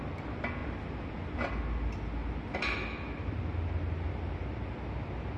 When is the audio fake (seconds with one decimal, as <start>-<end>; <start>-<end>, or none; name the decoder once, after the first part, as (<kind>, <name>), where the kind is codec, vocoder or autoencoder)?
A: none